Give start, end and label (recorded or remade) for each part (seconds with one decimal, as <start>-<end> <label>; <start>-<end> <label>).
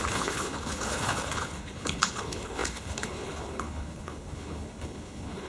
0.0-5.5 remade